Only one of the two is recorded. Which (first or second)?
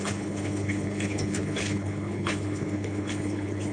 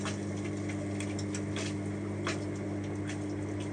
second